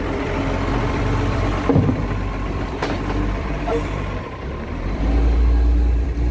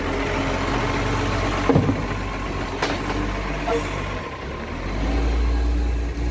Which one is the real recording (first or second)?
second